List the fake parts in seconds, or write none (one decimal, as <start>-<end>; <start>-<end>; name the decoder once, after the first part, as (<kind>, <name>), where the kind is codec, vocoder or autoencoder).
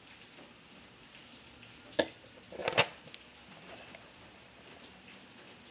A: none